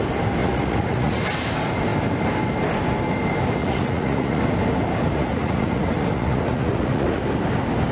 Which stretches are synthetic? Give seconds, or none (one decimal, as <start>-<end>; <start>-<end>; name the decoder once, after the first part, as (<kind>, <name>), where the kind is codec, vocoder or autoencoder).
0.4-1.1 (vocoder, Vocos); 3.6-4.4; 5.0-7.2